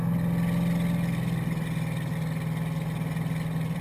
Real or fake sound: real